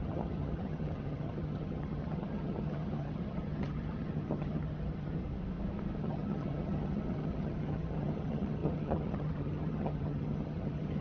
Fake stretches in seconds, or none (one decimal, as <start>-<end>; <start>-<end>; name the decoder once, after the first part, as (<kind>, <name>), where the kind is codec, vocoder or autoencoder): 0.0-5.2 (vocoder, HiFi-GAN); 6.0-11.0